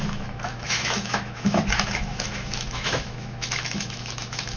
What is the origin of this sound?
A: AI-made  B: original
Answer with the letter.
A